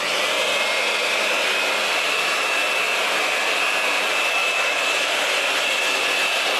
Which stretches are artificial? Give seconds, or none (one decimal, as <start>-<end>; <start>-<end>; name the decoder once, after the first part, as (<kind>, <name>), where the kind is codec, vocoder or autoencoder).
2.6-3.3 (vocoder, BigVGAN v2); 4.4-5.8